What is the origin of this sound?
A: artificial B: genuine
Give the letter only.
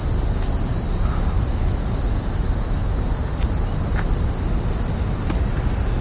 B